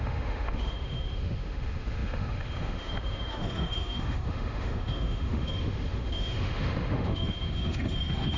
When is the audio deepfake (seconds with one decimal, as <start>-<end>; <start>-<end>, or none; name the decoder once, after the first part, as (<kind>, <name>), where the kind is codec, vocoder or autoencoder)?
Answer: 0.0-8.4 (autoencoder, DAC-VAE)